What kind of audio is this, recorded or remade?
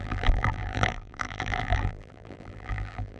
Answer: remade